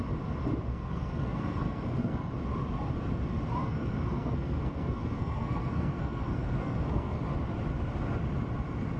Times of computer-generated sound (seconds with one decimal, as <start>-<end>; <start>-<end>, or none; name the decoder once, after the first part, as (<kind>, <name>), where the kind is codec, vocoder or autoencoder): 0.7-2.3 (codec, SNAC); 3.6-7.2